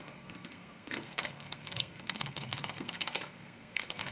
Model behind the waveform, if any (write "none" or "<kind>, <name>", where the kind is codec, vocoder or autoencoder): codec, SNAC